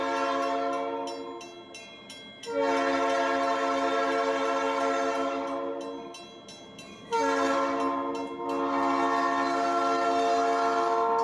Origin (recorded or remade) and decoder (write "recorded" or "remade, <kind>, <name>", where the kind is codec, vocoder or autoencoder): recorded